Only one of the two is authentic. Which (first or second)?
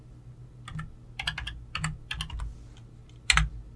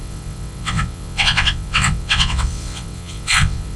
first